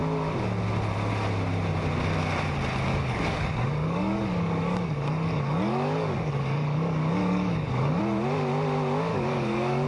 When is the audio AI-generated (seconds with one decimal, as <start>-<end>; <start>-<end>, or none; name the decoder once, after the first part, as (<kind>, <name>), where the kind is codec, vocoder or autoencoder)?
2.9-8.0 (codec, DAC); 9.1-9.9